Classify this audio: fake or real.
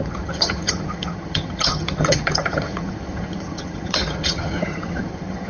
fake